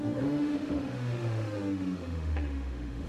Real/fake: fake